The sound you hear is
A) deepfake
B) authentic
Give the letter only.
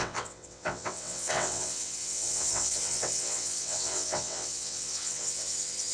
A